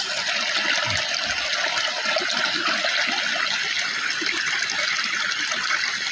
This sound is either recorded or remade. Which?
recorded